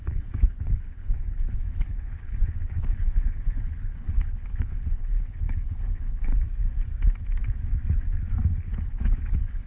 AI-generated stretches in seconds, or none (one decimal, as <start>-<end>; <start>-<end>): 0.0-6.3; 8.5-9.7